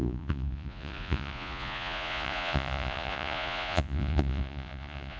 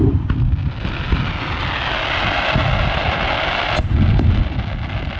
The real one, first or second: second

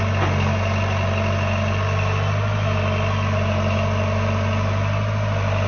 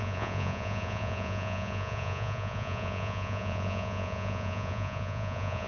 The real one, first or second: first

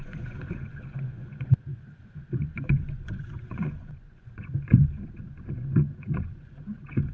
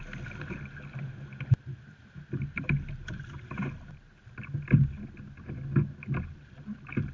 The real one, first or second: second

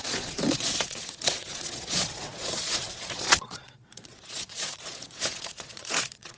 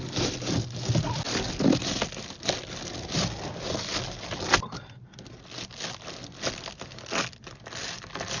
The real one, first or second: second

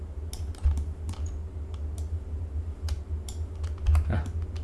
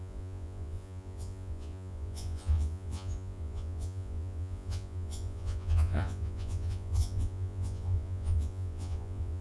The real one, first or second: first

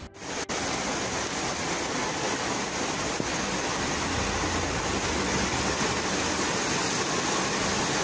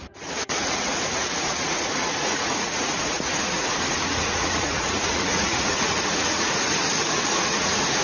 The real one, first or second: first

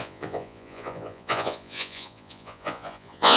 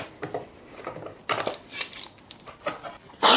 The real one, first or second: second